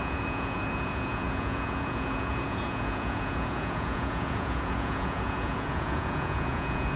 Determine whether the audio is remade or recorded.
remade